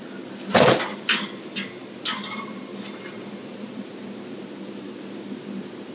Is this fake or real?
real